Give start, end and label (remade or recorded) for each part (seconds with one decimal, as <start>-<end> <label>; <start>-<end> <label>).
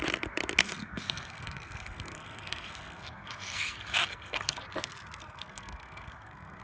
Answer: 0.0-0.6 recorded; 0.6-4.6 remade; 4.6-5.2 recorded; 5.2-6.6 remade